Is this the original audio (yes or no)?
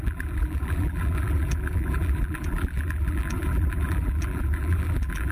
no